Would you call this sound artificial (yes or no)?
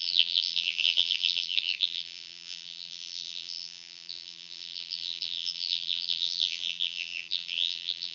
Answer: yes